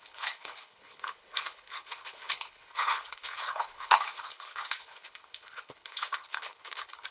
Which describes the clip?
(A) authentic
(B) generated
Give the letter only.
B